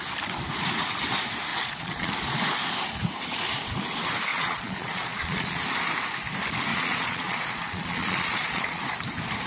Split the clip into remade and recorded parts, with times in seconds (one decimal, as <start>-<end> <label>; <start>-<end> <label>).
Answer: 0.0-1.5 recorded; 1.5-2.1 remade; 2.1-4.3 recorded; 4.3-5.6 remade; 5.6-6.7 recorded; 6.7-8.8 remade; 8.8-9.5 recorded